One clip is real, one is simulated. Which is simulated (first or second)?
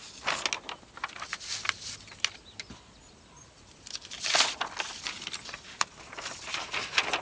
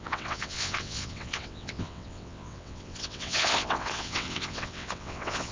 second